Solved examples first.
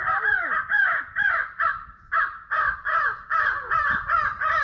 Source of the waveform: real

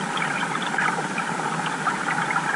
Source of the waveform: real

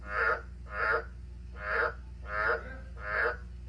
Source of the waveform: real